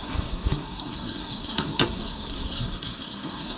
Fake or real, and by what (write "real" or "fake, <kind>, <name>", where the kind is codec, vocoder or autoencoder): fake, codec, SNAC